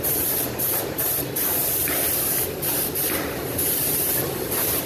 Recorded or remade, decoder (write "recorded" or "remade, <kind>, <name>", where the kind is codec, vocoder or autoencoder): remade, vocoder, BigVGAN v2